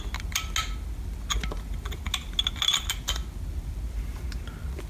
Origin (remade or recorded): recorded